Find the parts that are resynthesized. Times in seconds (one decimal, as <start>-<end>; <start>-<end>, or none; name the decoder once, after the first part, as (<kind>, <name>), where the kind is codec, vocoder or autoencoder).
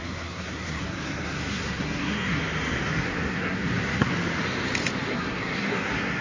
0.0-2.4 (codec, SNAC); 3.0-4.1; 5.1-6.2